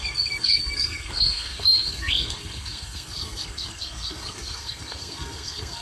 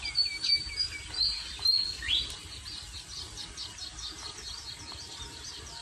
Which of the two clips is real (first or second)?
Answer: second